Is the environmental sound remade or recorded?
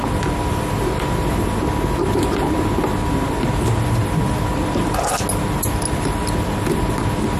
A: recorded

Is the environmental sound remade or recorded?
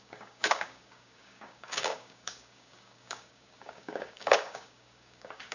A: remade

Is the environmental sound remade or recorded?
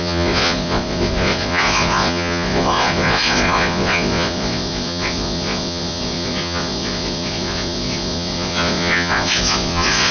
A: remade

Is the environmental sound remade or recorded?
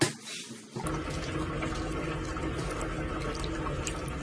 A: recorded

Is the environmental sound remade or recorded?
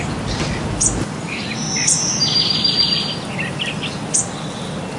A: recorded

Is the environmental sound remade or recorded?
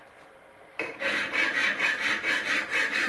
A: remade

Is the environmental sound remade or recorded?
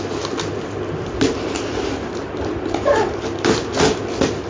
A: recorded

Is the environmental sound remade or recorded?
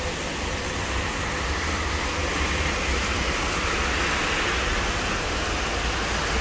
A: recorded